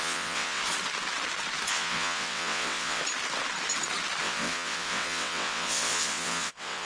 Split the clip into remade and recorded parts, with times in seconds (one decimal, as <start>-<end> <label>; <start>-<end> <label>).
0.0-0.6 remade; 0.6-1.7 recorded; 1.7-3.0 remade; 3.0-4.2 recorded; 4.2-6.9 remade